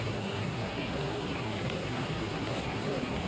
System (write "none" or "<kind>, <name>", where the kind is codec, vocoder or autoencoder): codec, SNAC